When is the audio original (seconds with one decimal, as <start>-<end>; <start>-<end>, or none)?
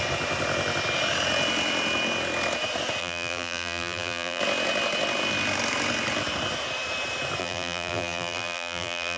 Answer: 0.0-3.0; 4.4-7.4